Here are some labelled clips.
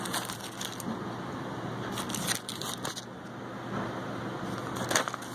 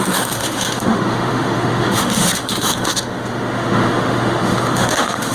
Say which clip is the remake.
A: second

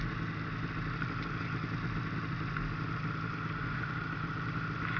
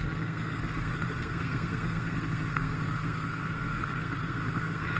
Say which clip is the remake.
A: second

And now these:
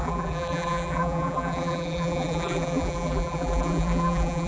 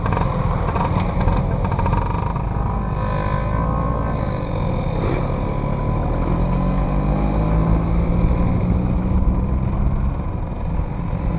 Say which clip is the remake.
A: first